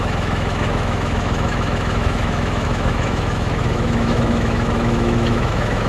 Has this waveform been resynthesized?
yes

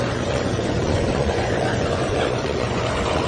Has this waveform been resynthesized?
yes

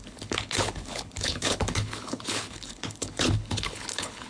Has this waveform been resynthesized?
yes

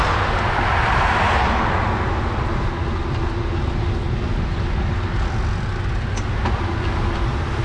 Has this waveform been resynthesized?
no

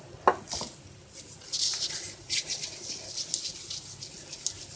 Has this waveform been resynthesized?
no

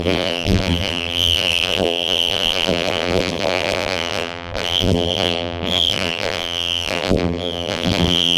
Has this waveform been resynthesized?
yes